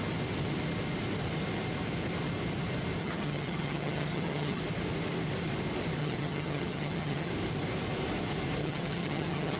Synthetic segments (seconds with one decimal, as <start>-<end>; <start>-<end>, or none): 3.0-4.6; 6.0-7.3; 8.6-9.6